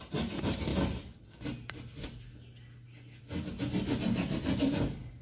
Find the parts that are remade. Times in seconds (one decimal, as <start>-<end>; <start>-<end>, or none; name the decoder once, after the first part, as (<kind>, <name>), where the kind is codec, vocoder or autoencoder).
none